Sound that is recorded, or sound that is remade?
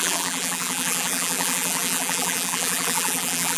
remade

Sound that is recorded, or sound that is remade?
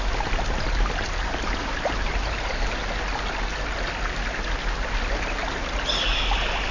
recorded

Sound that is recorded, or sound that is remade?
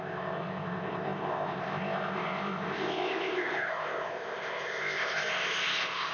remade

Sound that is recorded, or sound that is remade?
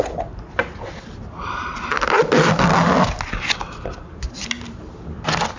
recorded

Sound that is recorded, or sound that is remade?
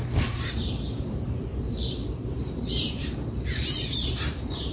remade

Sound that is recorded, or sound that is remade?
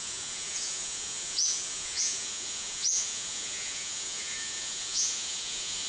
remade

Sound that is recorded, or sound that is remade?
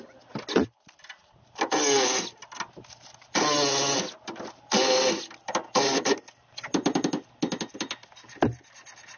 recorded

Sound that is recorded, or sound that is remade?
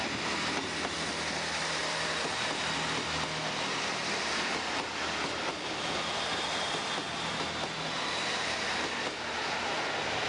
recorded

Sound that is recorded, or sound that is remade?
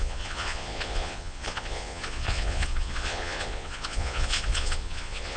remade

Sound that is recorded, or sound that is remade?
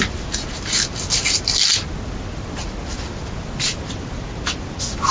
recorded